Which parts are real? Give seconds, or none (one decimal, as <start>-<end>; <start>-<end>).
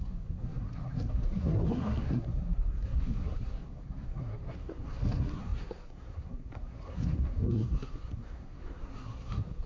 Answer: none